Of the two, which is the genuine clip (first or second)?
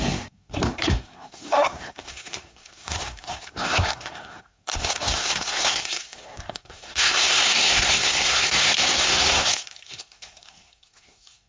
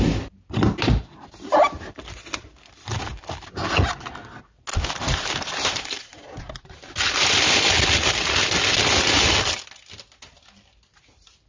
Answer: second